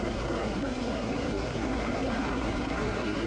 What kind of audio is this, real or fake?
fake